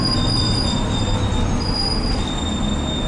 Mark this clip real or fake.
real